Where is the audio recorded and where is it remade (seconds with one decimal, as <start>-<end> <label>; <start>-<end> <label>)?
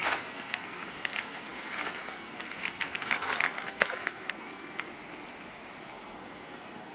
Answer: 0.0-4.9 remade; 4.9-5.8 recorded; 5.8-6.9 remade